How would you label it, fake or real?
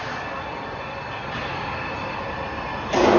real